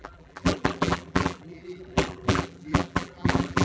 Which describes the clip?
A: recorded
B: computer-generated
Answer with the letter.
B